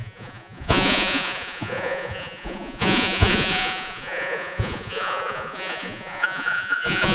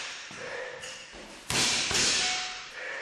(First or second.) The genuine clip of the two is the second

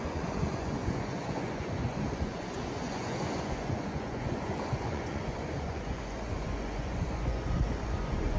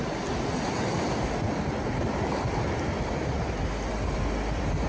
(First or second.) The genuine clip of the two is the second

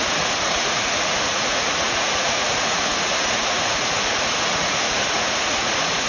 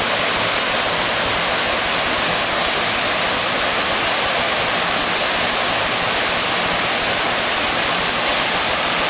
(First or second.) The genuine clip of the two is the second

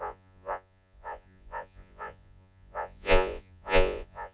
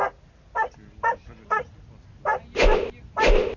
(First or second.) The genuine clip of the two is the second